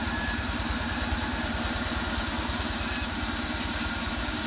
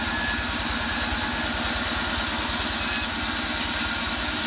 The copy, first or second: first